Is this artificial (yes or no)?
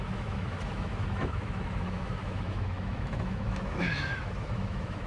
yes